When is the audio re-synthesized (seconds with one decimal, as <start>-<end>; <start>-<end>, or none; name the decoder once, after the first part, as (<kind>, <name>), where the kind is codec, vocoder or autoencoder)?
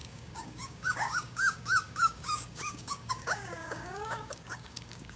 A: 0.0-5.2 (codec, DAC)